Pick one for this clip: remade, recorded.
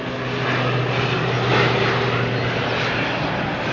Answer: recorded